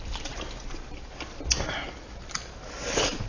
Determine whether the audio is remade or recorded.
recorded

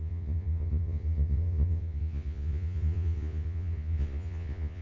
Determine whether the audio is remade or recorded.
remade